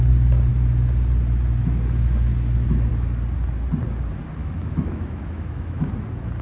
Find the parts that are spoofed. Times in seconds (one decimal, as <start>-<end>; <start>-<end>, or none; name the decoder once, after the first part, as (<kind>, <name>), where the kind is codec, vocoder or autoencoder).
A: 4.4-5.9 (autoencoder, DAC-VAE)